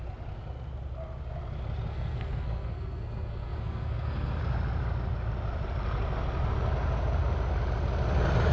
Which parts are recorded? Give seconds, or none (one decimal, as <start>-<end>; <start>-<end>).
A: 0.0-1.9; 4.4-8.5